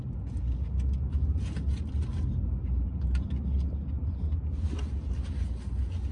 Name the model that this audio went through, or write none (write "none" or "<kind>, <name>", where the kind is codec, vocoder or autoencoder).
none